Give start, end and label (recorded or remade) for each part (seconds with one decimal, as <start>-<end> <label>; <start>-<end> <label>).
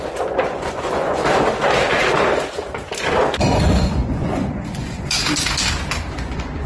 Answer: 0.0-1.2 remade; 1.2-3.5 recorded; 3.5-5.2 remade; 5.2-6.1 recorded; 6.1-6.7 remade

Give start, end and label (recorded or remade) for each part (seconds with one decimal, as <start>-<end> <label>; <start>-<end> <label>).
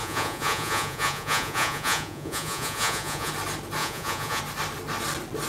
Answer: 0.0-3.3 remade; 3.3-3.8 recorded; 3.8-4.4 remade; 4.4-5.5 recorded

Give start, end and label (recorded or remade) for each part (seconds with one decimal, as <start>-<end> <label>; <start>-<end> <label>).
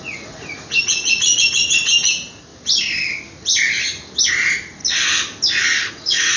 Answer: 0.0-2.5 remade; 2.5-4.3 recorded; 4.3-4.8 remade; 4.8-5.9 recorded; 5.9-6.4 remade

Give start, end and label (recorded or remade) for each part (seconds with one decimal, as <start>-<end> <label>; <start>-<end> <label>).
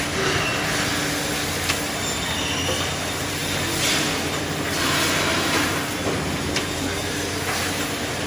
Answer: 0.0-8.3 recorded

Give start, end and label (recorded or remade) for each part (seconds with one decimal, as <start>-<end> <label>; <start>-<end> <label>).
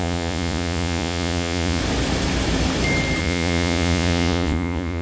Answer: 0.0-1.8 remade; 1.8-3.2 recorded; 3.2-5.0 remade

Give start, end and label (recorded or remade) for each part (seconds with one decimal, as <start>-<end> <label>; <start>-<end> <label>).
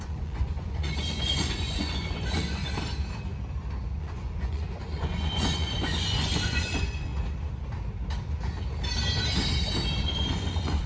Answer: 0.0-2.6 remade; 2.6-4.0 recorded; 4.0-7.1 remade; 7.1-10.0 recorded; 10.0-10.9 remade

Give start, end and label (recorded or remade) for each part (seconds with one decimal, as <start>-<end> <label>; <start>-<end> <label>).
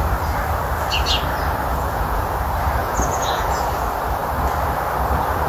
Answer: 0.0-1.7 recorded; 1.7-2.2 remade; 2.2-2.8 recorded; 2.8-3.7 remade; 3.7-5.5 recorded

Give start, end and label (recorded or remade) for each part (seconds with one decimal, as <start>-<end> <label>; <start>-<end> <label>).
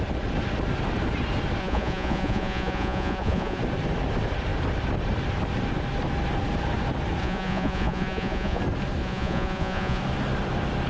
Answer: 0.0-1.6 recorded; 1.6-3.6 remade; 3.6-7.2 recorded; 7.2-8.6 remade; 8.6-9.0 recorded; 9.0-10.0 remade; 10.0-10.9 recorded